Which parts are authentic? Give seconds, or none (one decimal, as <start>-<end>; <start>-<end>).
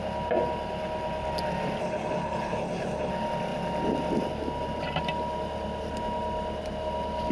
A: 0.0-1.8; 3.1-7.3